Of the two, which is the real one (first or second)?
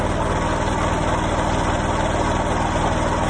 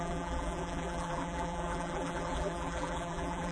first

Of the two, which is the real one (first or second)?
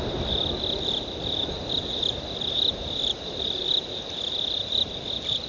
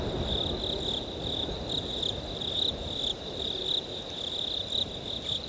second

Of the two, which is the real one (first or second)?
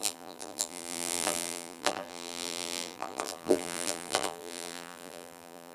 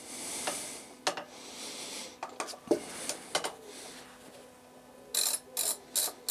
second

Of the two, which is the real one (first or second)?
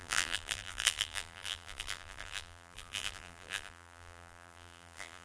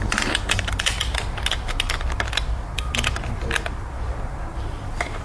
second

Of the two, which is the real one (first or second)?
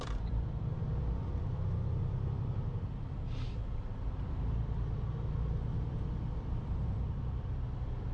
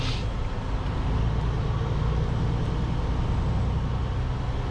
second